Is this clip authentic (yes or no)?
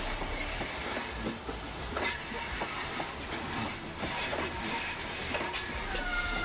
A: yes